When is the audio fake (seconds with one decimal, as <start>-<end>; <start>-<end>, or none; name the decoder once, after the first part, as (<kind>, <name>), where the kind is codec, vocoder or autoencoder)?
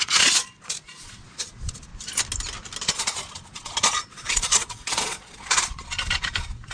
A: 0.0-1.9 (vocoder, Vocos); 2.9-6.7